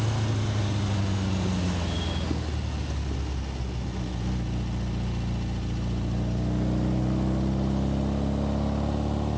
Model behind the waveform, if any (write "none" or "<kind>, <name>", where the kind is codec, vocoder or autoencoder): none